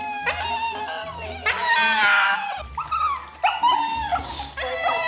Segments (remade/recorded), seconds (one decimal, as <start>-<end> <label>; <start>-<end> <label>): 0.0-5.1 recorded